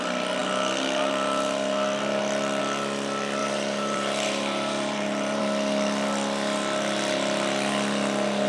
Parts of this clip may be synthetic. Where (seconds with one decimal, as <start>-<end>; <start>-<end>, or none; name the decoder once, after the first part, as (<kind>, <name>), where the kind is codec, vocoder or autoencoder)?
3.4-5.4 (vocoder, BigVGAN v2)